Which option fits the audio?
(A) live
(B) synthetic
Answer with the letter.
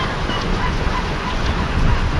B